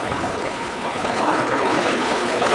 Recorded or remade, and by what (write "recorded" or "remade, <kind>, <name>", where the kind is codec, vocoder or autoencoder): remade, codec, HILCodec